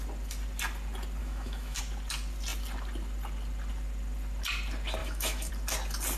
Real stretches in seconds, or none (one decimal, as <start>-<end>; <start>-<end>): 0.0-1.2; 1.8-5.0; 5.5-6.2